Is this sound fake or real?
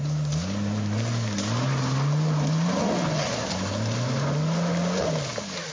real